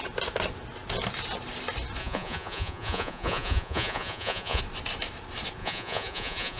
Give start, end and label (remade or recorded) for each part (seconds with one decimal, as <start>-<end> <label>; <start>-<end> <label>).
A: 0.0-2.0 recorded; 2.0-4.6 remade; 4.6-5.6 recorded; 5.6-6.6 remade

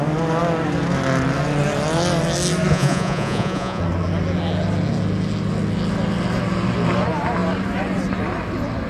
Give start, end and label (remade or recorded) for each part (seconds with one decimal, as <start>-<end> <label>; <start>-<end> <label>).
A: 0.0-2.7 recorded; 2.7-3.8 remade; 3.8-8.9 recorded

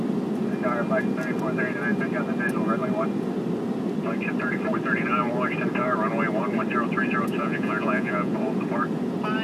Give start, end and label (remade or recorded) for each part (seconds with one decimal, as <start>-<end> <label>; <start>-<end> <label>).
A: 0.0-7.4 recorded; 7.4-8.3 remade; 8.3-9.4 recorded

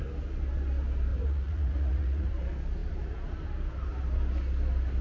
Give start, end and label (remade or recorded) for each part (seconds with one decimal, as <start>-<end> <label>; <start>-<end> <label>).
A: 0.0-1.1 recorded; 1.1-2.3 remade; 2.3-5.0 recorded

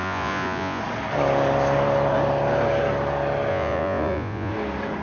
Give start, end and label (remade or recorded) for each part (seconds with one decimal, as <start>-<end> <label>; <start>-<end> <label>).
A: 0.0-0.8 remade; 0.8-3.5 recorded; 3.5-4.5 remade; 4.5-5.0 recorded